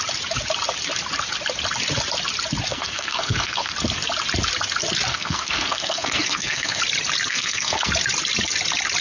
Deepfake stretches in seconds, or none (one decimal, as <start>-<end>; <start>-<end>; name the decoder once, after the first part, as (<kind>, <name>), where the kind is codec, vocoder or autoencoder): 2.7-3.7 (codec, SNAC); 5.1-6.8; 7.3-7.9